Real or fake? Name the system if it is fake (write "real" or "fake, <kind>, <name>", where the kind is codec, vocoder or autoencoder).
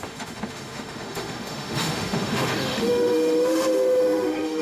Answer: fake, autoencoder, DAC-VAE